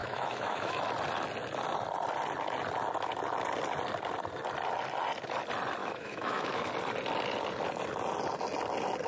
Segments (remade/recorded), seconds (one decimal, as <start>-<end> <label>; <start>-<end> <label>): 0.0-0.8 remade; 0.8-5.8 recorded; 5.8-6.7 remade; 6.7-9.1 recorded